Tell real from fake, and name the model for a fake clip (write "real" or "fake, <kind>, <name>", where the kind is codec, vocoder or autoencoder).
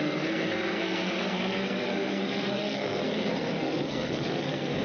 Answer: fake, codec, SNAC